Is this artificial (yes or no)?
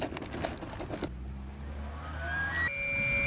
no